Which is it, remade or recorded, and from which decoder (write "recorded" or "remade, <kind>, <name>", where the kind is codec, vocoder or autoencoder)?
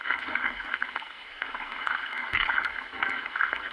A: remade, codec, SNAC